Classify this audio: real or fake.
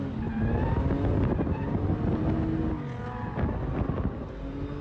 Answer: real